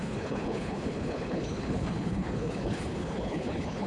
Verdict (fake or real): fake